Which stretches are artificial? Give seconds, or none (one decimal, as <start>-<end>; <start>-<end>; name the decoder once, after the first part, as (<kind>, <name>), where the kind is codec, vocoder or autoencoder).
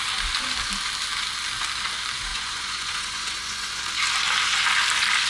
2.3-3.8 (vocoder, Vocos)